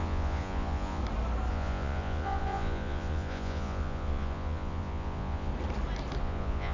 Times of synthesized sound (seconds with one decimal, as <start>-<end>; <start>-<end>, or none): 0.0-1.0; 1.5-5.5; 6.2-6.7